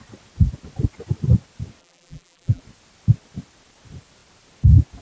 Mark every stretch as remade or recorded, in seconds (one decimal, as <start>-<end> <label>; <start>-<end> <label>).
0.0-1.8 recorded; 1.8-2.6 remade; 2.6-5.0 recorded